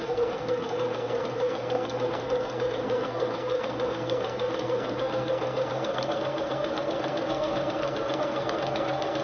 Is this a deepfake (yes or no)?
yes